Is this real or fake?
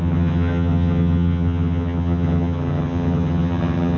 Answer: fake